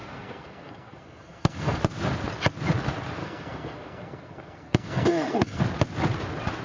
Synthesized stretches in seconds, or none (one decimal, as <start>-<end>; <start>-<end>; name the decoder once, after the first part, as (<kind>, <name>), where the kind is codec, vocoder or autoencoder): 0.0-1.8 (codec, SNAC); 3.2-5.6